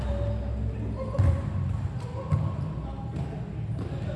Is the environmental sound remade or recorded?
recorded